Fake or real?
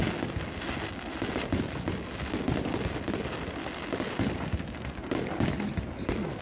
real